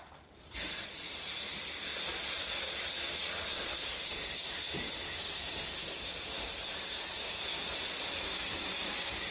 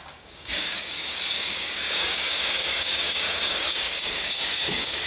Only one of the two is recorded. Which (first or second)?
first